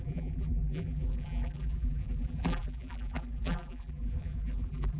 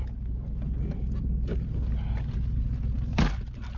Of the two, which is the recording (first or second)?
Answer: second